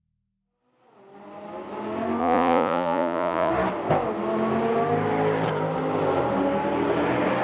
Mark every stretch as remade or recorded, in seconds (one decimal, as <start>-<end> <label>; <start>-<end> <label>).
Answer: 0.0-2.2 recorded; 2.2-3.5 remade; 3.5-7.4 recorded

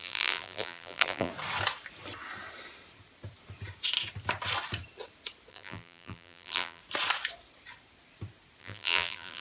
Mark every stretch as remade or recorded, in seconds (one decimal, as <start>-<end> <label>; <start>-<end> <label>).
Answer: 0.0-1.3 remade; 1.3-5.5 recorded; 5.5-6.8 remade; 6.8-8.6 recorded; 8.6-9.4 remade

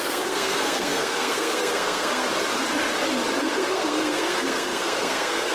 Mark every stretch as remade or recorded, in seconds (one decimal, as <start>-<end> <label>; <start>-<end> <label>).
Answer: 0.0-2.2 remade; 2.2-3.4 recorded; 3.4-5.5 remade

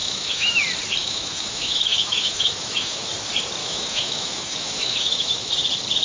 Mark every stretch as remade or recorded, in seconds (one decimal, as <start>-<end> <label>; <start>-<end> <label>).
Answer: 0.0-0.6 remade; 0.6-1.0 recorded; 1.0-3.1 remade; 3.1-3.6 recorded; 3.6-5.5 remade; 5.5-6.0 recorded

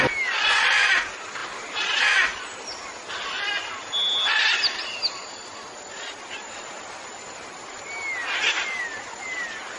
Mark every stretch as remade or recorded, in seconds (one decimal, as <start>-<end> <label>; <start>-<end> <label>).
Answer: 0.0-9.8 recorded

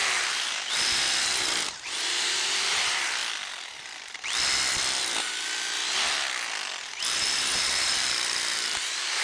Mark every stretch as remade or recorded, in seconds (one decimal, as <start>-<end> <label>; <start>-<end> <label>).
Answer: 0.0-3.2 remade; 3.2-6.8 recorded; 6.8-9.2 remade